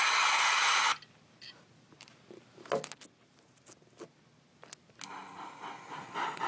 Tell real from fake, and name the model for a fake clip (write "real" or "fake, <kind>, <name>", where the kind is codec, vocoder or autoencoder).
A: real